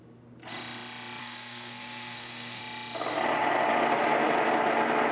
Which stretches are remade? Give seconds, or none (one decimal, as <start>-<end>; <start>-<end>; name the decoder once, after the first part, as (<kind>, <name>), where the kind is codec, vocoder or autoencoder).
1.2-2.6 (codec, SNAC)